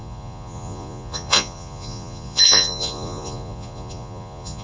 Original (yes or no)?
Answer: no